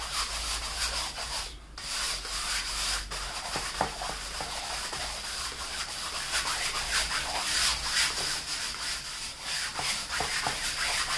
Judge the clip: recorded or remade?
recorded